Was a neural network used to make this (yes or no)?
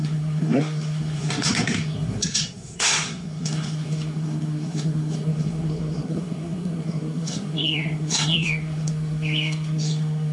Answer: yes